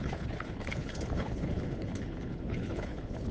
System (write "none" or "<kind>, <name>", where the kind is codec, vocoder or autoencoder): codec, HILCodec